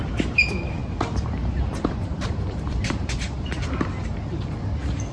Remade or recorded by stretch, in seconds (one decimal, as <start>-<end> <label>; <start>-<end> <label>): 0.0-0.8 recorded; 0.8-3.9 remade; 3.9-5.1 recorded